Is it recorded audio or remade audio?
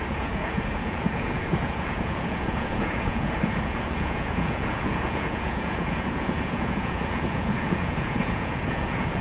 remade